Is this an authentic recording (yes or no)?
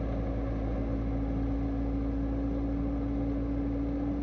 yes